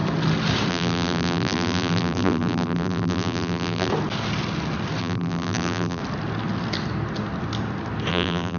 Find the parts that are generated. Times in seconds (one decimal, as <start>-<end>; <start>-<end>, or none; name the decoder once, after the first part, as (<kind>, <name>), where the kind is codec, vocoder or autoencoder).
0.7-3.9 (vocoder, BigVGAN v2); 5.0-6.0; 8.1-8.6